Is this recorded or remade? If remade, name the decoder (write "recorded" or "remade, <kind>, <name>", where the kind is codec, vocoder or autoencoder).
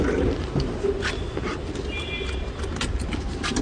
recorded